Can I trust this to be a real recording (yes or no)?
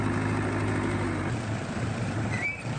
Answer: yes